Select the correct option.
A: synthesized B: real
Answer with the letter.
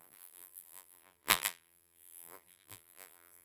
A